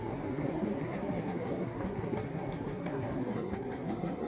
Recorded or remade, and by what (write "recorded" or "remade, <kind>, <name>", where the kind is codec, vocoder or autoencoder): remade, codec, SNAC